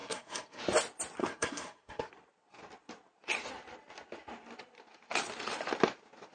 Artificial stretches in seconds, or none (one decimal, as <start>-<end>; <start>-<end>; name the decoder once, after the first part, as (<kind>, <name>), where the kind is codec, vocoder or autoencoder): 0.0-0.6 (codec, SNAC); 1.2-2.1